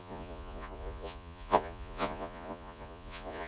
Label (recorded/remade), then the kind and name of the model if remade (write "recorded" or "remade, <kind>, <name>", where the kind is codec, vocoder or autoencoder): remade, vocoder, Vocos